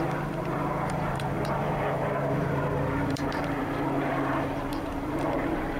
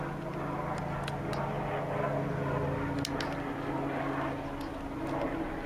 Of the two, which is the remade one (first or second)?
first